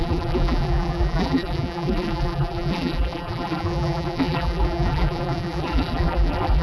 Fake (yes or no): yes